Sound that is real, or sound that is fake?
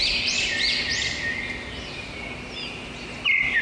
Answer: real